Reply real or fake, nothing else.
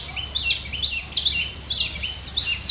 real